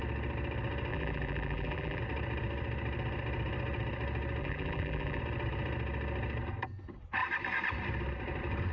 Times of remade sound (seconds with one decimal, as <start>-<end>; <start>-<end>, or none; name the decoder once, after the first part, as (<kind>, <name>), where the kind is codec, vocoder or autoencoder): 0.9-2.0 (vocoder, BigVGAN v2); 4.4-5.2